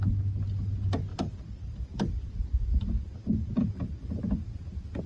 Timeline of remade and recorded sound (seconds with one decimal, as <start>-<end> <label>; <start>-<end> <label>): 0.0-5.1 recorded